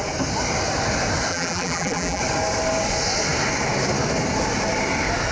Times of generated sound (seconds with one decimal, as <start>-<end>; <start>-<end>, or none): 1.3-2.2